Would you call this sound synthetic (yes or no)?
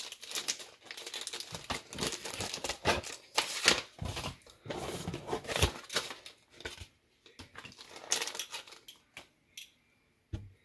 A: no